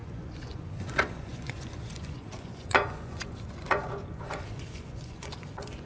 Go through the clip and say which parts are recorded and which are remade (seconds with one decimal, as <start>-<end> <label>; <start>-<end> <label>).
0.0-5.9 remade